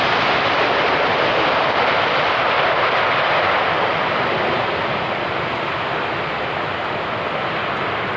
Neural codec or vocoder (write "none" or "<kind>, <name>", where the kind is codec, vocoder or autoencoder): none